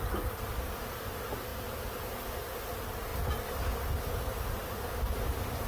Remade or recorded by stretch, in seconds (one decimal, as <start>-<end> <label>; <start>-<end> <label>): 0.0-5.7 recorded